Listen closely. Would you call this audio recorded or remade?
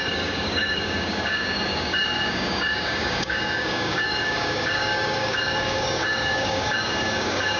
remade